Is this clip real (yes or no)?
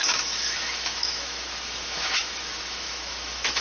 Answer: no